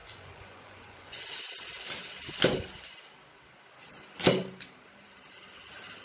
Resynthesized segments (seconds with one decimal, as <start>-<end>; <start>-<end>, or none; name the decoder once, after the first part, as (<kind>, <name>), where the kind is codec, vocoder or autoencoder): 0.0-1.2 (vocoder, Vocos)